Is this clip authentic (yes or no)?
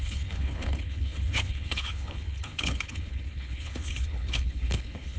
no